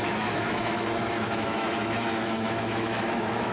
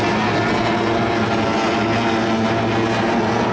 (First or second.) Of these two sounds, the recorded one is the second